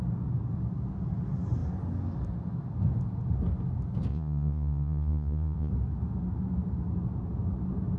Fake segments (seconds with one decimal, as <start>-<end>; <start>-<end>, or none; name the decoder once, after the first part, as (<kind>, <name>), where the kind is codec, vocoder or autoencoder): 4.1-5.7 (vocoder, Vocos)